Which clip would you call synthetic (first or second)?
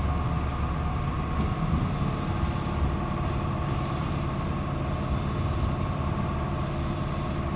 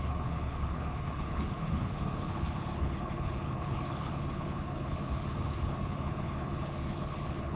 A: second